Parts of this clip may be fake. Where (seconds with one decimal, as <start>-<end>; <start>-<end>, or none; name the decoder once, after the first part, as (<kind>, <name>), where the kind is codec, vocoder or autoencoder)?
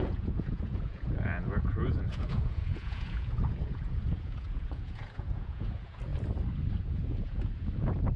0.0-6.1 (vocoder, Vocos); 6.8-8.2